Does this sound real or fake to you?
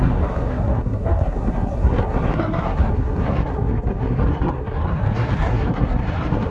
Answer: fake